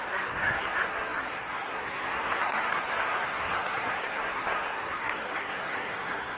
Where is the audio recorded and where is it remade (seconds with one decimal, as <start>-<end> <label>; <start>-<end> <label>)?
0.0-6.4 remade